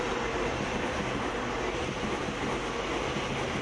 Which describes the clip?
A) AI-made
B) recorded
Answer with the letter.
B